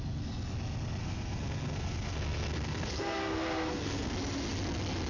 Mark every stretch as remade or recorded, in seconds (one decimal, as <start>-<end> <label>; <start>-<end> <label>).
0.0-1.0 recorded; 1.0-4.1 remade; 4.1-5.1 recorded